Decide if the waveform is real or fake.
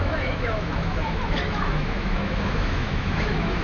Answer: fake